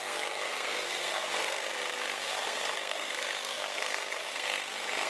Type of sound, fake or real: fake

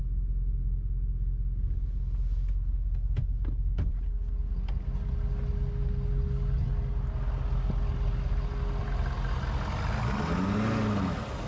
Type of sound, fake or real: real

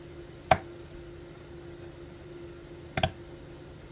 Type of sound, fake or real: real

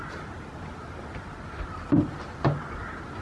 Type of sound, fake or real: real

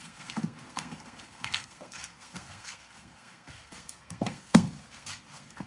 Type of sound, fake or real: fake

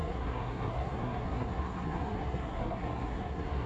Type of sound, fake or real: fake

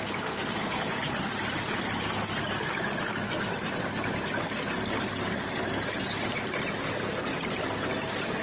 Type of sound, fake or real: real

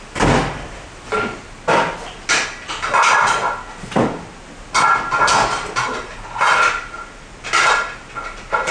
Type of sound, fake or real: real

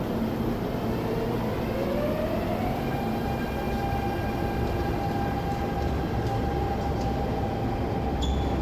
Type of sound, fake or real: real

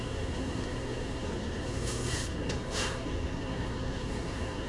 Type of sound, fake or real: fake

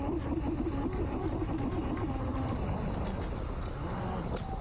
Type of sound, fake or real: real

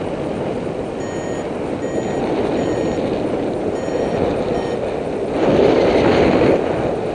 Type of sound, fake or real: real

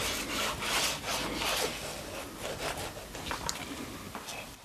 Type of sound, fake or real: real